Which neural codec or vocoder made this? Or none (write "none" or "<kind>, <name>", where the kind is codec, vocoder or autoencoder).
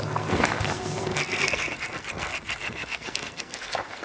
codec, SNAC